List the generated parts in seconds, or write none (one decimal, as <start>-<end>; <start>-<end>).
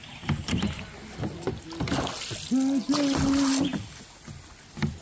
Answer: 0.0-0.8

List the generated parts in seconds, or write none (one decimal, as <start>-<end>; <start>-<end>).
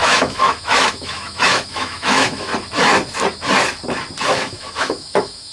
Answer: 0.0-2.5; 4.3-5.5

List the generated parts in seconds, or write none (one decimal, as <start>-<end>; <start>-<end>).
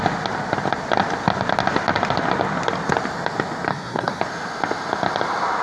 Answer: 3.7-4.2